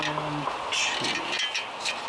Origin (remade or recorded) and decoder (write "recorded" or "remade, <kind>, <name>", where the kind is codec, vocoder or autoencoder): recorded